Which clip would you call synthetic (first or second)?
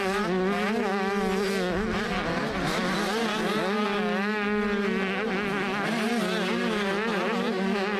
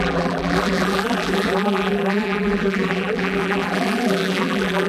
second